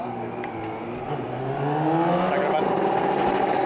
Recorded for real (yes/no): yes